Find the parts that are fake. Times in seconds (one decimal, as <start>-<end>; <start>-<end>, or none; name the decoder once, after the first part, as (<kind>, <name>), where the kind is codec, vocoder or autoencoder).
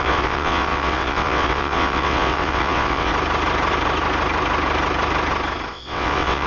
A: 0.0-3.1 (vocoder, WaveNeXt); 5.7-6.5